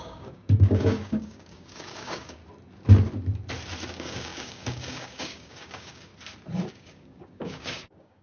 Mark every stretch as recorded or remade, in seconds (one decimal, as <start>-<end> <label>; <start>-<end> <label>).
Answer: 0.0-2.4 remade; 2.4-3.9 recorded; 3.9-6.1 remade; 6.1-6.7 recorded; 6.7-8.2 remade